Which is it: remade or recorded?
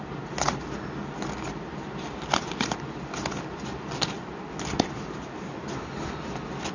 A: recorded